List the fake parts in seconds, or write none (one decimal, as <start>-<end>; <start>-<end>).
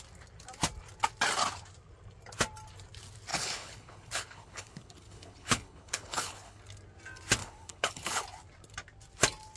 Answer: 3.3-6.6; 7.4-8.2